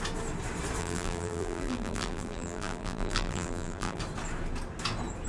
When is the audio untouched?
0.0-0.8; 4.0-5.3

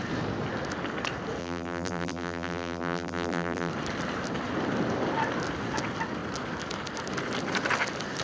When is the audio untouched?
0.0-1.4; 3.7-8.2

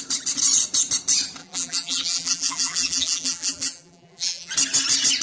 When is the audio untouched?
0.0-1.4; 4.5-5.2

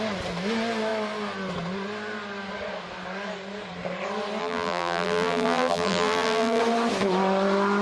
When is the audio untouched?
0.0-4.4; 6.6-7.8